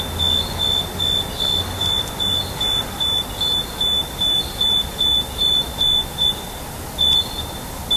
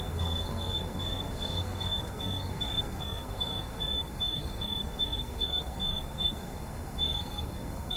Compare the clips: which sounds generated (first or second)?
second